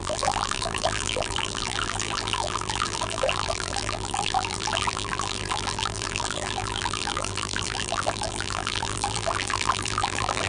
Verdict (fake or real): fake